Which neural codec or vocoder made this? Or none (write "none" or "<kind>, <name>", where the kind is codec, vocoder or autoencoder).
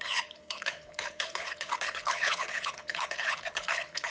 codec, HILCodec